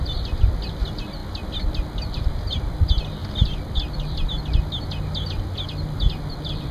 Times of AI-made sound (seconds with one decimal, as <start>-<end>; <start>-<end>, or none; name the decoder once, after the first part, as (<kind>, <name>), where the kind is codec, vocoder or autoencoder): none

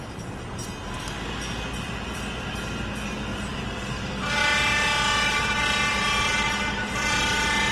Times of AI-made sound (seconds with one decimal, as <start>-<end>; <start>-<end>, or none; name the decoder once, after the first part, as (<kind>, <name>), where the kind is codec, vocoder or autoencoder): 3.3-4.1 (vocoder, BigVGAN v2); 5.9-7.7

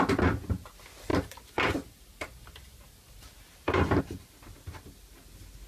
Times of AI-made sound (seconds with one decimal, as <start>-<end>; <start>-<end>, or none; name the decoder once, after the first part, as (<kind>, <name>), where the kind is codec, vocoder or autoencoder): 1.1-4.0 (vocoder, BigVGAN v2)